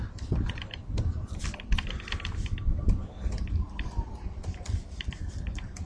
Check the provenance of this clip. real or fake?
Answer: fake